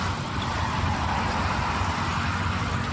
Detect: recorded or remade recorded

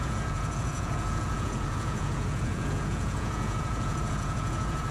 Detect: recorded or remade remade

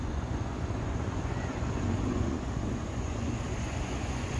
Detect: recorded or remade remade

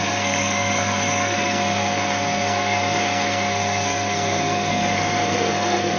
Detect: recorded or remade remade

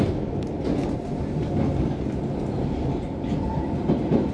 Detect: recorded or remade recorded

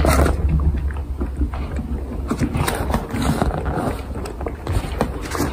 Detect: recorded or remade recorded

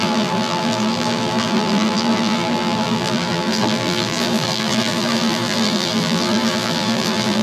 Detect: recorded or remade remade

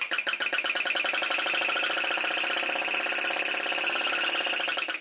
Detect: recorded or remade recorded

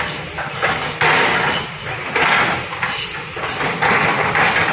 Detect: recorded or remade recorded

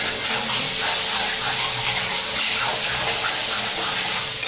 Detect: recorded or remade recorded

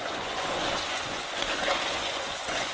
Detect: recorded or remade remade